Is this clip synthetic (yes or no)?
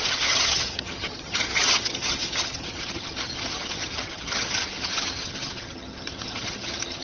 yes